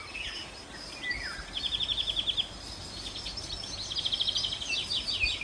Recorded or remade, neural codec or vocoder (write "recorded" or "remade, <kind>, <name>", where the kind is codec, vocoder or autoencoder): recorded